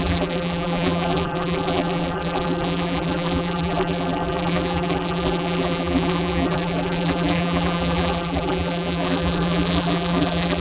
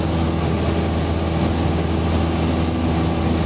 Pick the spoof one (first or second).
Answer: first